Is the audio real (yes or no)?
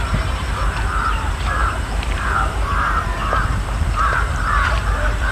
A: no